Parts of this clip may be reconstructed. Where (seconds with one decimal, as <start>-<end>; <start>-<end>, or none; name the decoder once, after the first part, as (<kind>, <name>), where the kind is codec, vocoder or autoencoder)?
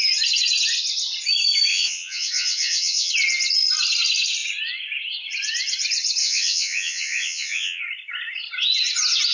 1.7-3.1 (vocoder, Vocos); 6.2-7.8